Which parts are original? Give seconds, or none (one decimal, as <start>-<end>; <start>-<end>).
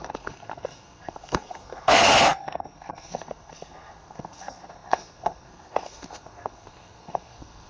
none